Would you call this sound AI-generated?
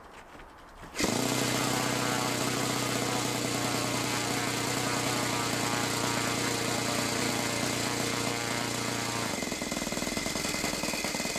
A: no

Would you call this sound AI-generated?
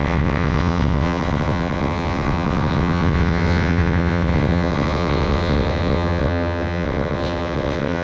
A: yes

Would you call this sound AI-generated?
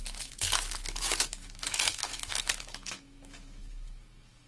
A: yes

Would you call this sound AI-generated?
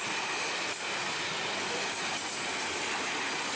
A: no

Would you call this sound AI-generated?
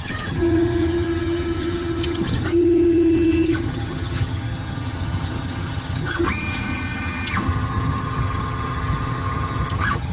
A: yes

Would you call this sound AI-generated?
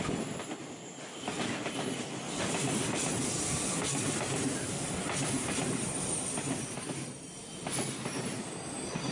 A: no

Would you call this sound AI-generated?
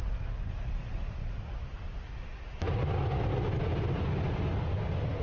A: no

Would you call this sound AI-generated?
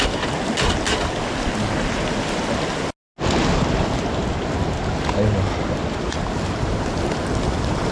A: no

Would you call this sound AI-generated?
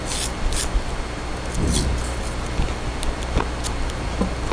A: no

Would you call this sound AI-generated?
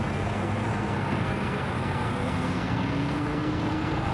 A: yes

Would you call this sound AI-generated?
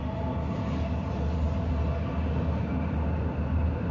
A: no